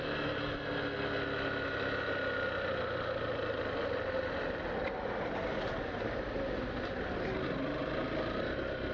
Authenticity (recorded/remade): recorded